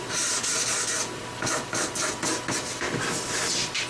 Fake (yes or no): no